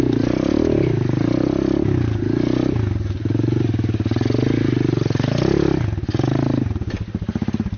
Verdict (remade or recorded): recorded